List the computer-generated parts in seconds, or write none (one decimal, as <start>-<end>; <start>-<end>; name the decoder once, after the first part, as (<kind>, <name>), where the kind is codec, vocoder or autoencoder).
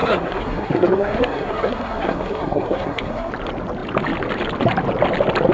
0.0-3.3 (codec, SNAC)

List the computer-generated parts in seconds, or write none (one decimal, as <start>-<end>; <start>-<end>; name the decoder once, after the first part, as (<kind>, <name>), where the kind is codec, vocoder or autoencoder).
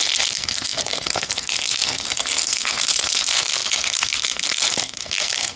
0.0-5.6 (codec, SNAC)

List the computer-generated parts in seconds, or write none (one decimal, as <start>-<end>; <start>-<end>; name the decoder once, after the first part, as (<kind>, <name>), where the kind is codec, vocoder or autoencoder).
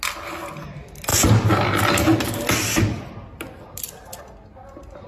none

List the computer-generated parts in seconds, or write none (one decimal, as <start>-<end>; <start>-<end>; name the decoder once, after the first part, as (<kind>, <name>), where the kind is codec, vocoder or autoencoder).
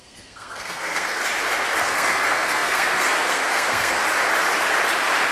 0.0-1.2 (codec, SNAC); 1.8-4.0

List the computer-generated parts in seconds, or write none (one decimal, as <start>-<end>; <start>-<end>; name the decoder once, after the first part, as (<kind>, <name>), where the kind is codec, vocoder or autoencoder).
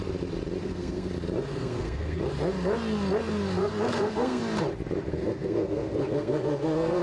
0.6-1.1 (codec, SNAC); 1.5-2.2; 3.6-4.4; 5.1-7.0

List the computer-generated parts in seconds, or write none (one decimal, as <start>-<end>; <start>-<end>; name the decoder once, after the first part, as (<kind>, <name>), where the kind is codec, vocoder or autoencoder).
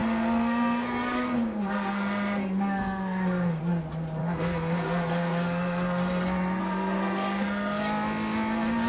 0.0-3.6 (codec, SNAC); 4.2-7.8